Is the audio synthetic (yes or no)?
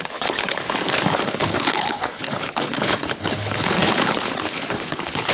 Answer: yes